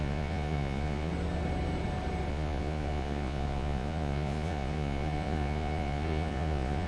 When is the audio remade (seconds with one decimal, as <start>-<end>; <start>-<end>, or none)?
0.0-1.1; 2.3-6.9

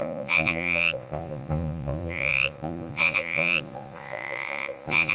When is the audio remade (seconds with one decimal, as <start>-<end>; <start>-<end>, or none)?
0.0-5.1